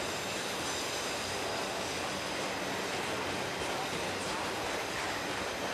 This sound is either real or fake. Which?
real